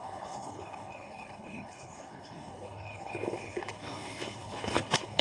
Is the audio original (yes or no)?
no